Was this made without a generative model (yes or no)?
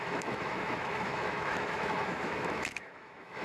no